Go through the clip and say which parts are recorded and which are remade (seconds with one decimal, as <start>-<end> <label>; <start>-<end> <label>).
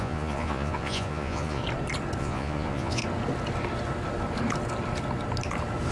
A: 0.0-1.6 remade; 1.6-2.2 recorded; 2.2-3.0 remade; 3.0-5.9 recorded